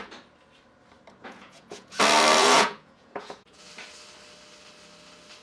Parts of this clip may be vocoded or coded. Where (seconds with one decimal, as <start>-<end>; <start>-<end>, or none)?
1.2-2.0; 2.4-3.7